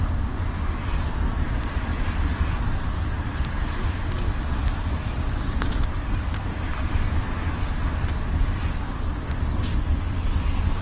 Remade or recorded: recorded